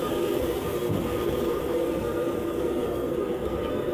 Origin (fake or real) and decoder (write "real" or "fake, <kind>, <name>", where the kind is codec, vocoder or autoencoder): fake, codec, SNAC